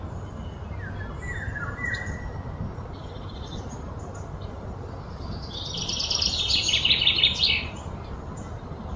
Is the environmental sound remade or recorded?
recorded